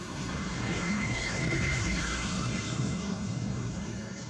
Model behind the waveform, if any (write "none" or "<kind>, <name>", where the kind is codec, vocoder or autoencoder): codec, SNAC